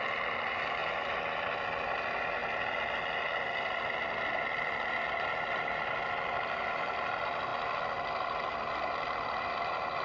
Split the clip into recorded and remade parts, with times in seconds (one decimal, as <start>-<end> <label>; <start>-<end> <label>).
0.0-10.0 recorded